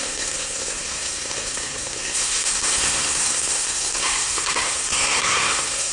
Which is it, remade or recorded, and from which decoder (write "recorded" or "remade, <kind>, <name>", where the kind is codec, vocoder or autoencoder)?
remade, codec, SNAC